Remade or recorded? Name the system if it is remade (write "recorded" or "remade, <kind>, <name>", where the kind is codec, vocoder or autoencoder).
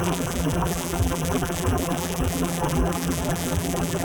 remade, vocoder, BigVGAN v2